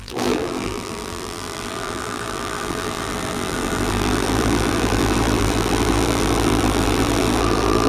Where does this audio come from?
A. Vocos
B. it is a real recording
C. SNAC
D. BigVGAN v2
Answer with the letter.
D